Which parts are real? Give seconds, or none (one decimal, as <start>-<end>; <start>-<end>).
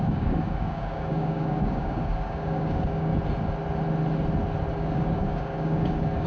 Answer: 3.1-4.7